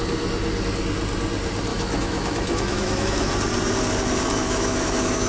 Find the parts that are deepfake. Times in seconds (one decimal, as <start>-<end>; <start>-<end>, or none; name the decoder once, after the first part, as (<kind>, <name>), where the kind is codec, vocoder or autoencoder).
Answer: 1.7-3.3 (autoencoder, DAC-VAE); 4.4-5.3